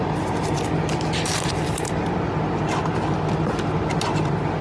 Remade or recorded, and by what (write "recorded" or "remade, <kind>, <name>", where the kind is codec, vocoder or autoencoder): recorded